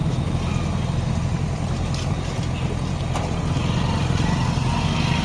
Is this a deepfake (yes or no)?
no